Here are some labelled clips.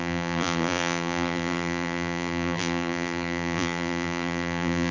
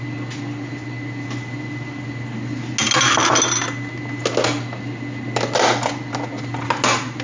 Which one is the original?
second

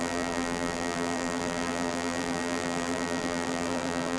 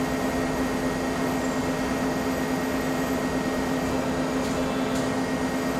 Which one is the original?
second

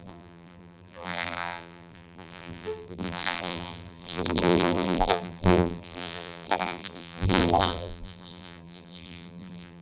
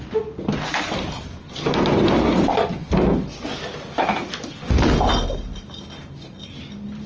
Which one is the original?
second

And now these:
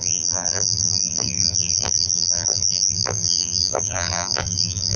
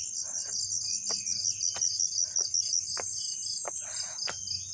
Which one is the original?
second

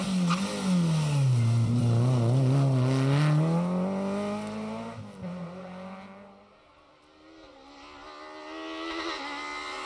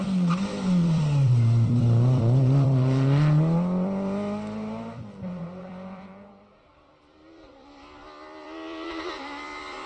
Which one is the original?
first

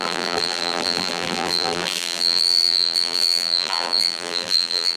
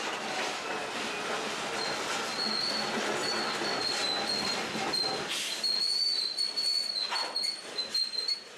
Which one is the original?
second